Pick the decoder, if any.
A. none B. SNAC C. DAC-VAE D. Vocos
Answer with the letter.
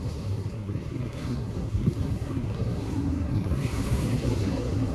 B